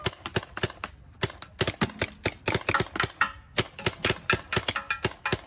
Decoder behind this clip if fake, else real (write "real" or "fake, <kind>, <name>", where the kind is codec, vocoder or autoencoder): real